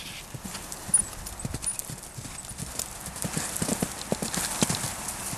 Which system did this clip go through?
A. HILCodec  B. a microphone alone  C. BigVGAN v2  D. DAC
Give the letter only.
B